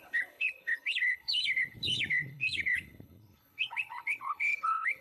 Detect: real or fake fake